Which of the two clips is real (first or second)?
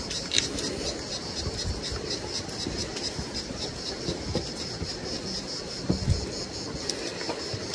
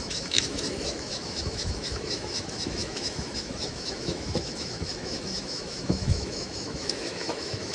first